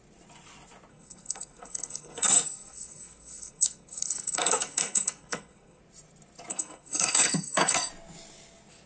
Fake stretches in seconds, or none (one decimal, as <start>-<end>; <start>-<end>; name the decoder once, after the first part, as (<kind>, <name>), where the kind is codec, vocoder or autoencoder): 0.9-5.8 (codec, SNAC); 6.5-7.9